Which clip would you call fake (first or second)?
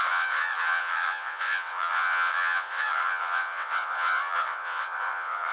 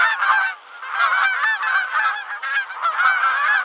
first